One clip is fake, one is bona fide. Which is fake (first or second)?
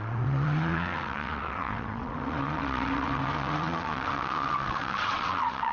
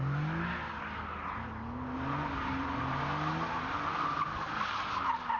first